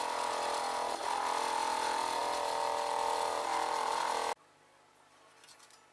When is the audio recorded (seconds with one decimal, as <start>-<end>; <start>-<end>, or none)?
0.0-5.9